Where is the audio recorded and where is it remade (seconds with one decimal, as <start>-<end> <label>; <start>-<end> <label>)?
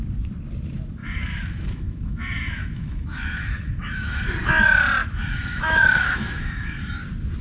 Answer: 0.0-1.0 recorded; 1.0-4.3 remade; 4.3-5.0 recorded; 5.0-6.8 remade; 6.8-7.4 recorded